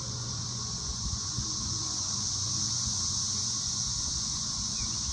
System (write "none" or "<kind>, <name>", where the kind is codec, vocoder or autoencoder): vocoder, Vocos